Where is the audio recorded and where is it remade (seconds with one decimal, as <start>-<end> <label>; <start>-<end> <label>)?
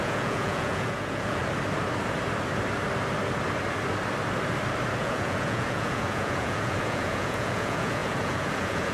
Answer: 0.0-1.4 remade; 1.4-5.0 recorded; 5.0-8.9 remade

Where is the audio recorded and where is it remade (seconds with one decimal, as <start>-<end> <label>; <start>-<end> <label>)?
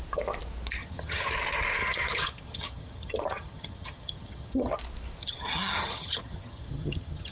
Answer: 0.0-0.8 recorded; 0.8-1.3 remade; 1.3-1.8 recorded; 1.8-4.8 remade; 4.8-5.2 recorded; 5.2-7.3 remade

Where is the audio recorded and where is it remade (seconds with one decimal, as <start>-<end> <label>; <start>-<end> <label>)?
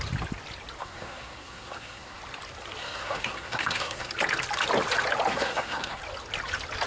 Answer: 0.0-0.8 recorded; 0.8-2.2 remade; 2.2-2.8 recorded; 2.8-4.1 remade; 4.1-5.3 recorded; 5.3-6.0 remade; 6.0-6.9 recorded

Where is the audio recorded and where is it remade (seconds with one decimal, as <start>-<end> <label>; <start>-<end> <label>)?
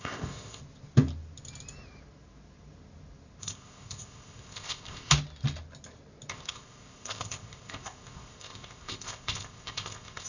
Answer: 0.0-0.6 remade; 0.6-3.4 recorded; 3.4-5.1 remade; 5.1-6.3 recorded; 6.3-10.3 remade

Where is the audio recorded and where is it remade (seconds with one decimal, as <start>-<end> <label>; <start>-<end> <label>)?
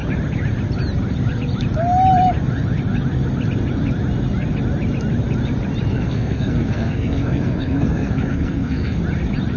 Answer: 0.0-5.9 recorded; 5.9-9.0 remade; 9.0-9.6 recorded